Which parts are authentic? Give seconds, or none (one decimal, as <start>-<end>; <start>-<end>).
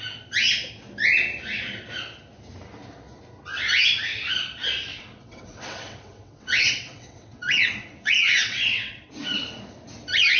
0.0-4.9; 9.6-10.4